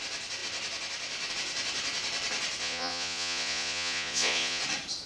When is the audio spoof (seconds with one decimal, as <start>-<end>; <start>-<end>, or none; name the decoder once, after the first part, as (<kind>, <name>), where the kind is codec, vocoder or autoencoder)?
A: 2.6-4.6 (vocoder, Vocos)